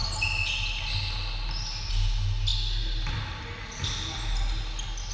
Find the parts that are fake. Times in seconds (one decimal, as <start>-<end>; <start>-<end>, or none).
none